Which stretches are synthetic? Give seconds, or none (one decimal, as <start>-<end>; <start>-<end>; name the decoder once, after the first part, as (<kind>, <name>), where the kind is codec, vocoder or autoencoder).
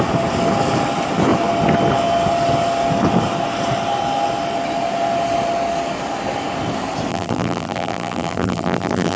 7.1-9.2 (vocoder, BigVGAN v2)